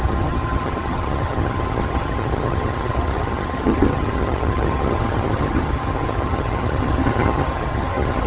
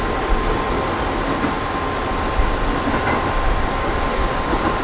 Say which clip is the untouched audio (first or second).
second